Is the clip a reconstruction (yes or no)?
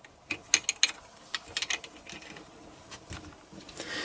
no